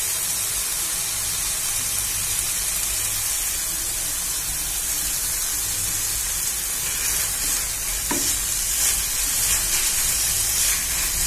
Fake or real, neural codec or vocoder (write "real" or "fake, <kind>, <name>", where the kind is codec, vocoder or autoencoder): real